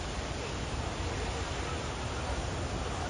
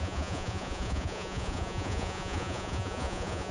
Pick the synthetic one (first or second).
second